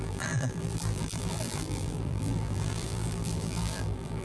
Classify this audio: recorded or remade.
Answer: remade